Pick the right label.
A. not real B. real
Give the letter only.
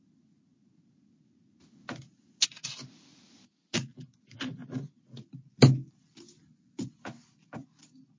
B